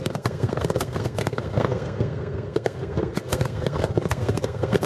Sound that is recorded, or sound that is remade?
remade